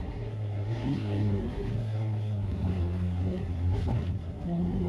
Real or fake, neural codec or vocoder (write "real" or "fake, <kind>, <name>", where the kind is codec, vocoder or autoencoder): fake, codec, SNAC